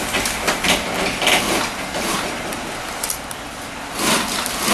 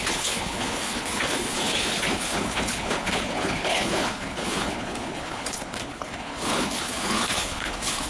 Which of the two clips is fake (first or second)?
second